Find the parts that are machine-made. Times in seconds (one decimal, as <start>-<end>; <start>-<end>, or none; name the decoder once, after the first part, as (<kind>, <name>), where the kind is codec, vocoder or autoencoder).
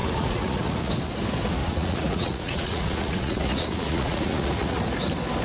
0.0-0.9 (vocoder, Vocos); 1.6-4.8